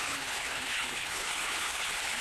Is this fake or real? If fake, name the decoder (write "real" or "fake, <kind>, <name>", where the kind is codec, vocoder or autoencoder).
fake, codec, HILCodec